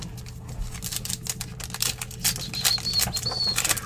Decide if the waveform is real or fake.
real